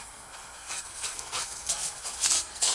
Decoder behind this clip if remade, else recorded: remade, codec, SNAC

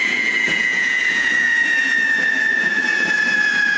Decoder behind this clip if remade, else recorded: remade, vocoder, Vocos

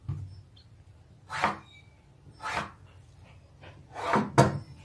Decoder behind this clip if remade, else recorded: recorded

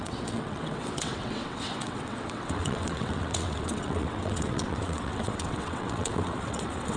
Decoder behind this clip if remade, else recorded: remade, vocoder, WaveNeXt